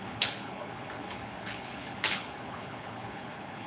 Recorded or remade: remade